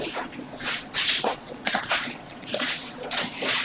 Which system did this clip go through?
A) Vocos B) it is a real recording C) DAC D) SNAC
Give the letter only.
A